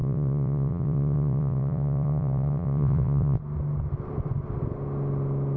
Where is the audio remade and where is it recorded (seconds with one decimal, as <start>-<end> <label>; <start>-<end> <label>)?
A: 0.0-3.4 remade; 3.4-5.6 recorded

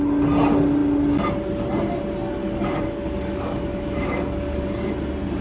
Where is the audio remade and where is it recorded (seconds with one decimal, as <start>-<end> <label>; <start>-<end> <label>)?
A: 0.0-2.4 recorded; 2.4-4.9 remade; 4.9-5.4 recorded

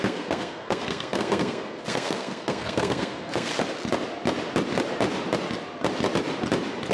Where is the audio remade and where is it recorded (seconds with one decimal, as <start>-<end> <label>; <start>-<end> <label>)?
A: 0.0-3.5 remade; 3.5-6.9 recorded

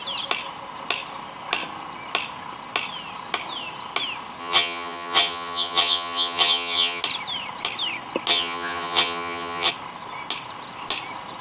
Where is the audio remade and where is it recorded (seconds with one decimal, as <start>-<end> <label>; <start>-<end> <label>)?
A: 0.0-4.4 recorded; 4.4-7.0 remade; 7.0-8.3 recorded; 8.3-9.7 remade; 9.7-11.4 recorded

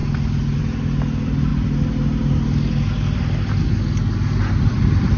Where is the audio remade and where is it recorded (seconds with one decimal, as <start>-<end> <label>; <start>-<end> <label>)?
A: 0.0-5.2 recorded

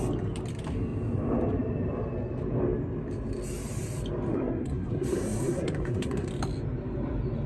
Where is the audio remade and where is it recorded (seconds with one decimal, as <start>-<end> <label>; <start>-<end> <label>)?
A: 0.0-4.3 recorded; 4.3-6.3 remade; 6.3-7.5 recorded

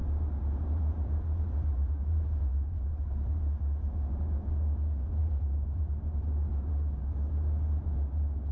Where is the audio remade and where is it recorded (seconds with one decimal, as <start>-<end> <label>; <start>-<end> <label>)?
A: 0.0-3.3 remade; 3.3-5.2 recorded; 5.2-5.8 remade; 5.8-8.5 recorded